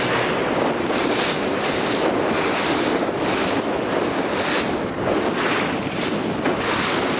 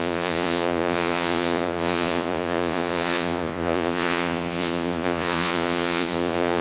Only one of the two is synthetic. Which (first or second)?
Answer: second